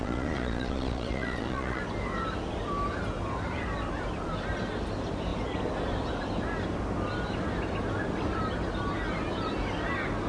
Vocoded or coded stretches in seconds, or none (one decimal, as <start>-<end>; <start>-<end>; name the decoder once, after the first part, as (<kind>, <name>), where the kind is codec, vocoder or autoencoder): 0.0-1.8 (vocoder, Vocos)

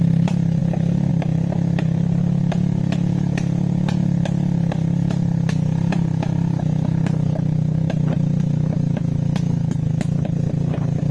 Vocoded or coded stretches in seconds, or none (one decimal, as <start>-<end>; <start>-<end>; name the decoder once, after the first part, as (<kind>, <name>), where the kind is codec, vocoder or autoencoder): none